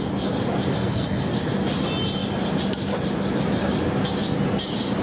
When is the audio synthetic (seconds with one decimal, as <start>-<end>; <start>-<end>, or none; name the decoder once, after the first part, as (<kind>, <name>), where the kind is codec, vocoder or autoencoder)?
0.7-1.3 (codec, SNAC)